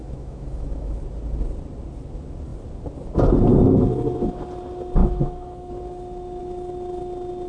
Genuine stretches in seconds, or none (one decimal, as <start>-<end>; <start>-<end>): 1.0-5.0; 5.7-7.5